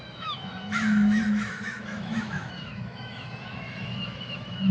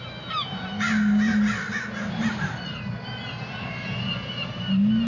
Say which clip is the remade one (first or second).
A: first